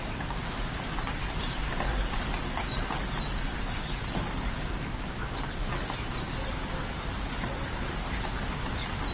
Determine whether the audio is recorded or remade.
recorded